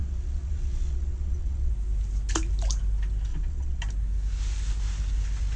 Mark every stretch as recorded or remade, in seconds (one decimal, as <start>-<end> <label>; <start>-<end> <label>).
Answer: 0.0-1.7 remade; 1.7-3.3 recorded; 3.3-3.8 remade; 3.8-5.6 recorded